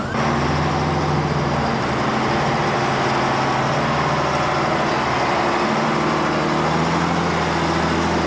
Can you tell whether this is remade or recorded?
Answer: recorded